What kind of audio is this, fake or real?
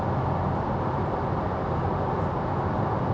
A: real